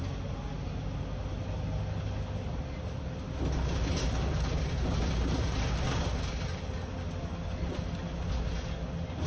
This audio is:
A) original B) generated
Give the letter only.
A